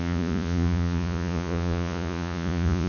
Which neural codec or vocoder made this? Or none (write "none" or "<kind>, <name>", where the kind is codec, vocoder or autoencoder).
vocoder, Vocos